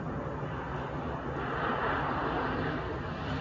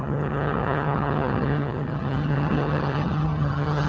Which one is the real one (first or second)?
first